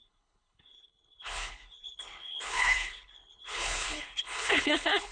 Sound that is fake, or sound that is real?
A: fake